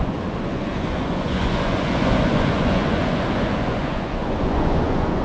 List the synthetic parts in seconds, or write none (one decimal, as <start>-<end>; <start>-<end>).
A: 0.0-5.2